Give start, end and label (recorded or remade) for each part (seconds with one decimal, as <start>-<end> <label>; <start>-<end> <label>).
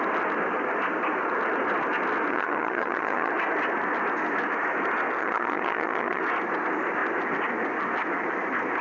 0.0-2.3 recorded; 2.3-3.3 remade; 3.3-5.2 recorded; 5.2-6.2 remade; 6.2-8.8 recorded